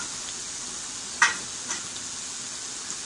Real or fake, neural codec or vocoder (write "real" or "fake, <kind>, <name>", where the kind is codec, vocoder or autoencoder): real